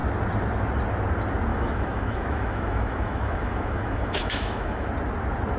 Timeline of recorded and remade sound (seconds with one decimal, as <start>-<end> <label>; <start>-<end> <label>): 0.0-1.5 recorded; 1.5-4.9 remade; 4.9-5.6 recorded